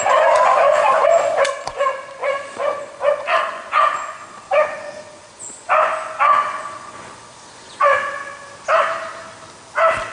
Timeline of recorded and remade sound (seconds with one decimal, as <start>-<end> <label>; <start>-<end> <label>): 0.0-8.2 remade; 8.2-10.1 recorded